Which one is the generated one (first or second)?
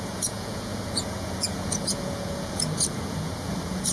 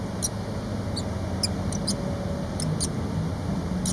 first